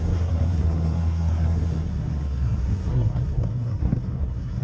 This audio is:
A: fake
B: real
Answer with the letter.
A